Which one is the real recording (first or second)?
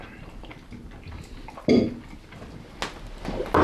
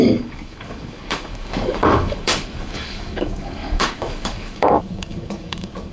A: first